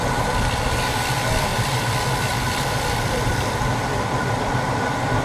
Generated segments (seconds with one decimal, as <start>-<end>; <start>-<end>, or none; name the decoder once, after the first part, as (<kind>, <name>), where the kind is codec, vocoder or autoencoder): 1.5-4.6 (vocoder, BigVGAN v2)